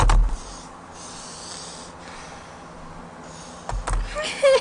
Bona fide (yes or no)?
yes